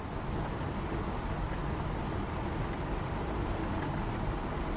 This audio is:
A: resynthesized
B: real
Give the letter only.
B